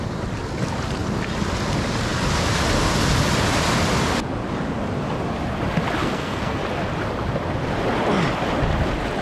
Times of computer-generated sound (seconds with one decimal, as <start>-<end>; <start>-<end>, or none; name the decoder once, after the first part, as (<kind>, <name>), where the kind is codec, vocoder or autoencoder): 6.0-6.6 (codec, SNAC)